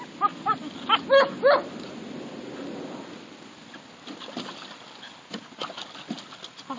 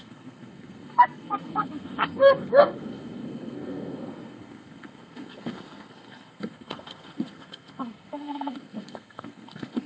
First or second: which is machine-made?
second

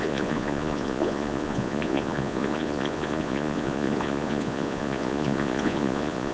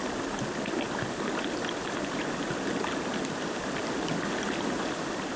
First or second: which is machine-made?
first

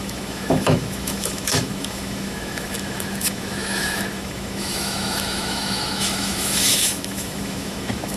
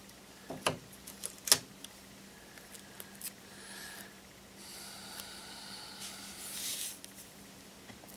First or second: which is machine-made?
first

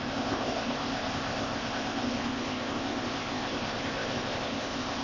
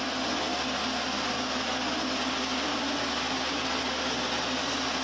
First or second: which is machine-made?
first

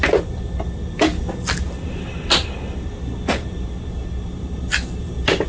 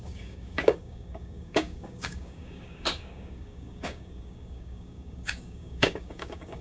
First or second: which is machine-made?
second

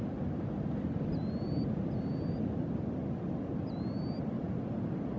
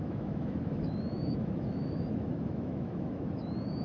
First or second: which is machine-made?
second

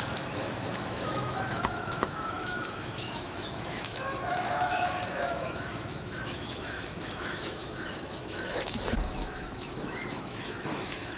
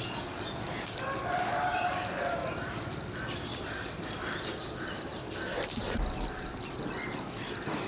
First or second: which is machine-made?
first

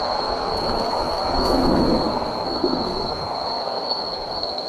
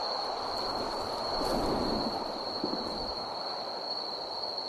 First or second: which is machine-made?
first